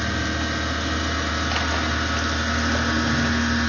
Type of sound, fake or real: real